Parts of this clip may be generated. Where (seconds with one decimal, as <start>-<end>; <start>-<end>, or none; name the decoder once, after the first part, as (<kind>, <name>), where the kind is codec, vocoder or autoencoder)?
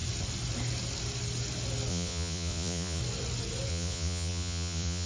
1.9-3.0 (vocoder, Vocos); 3.7-5.1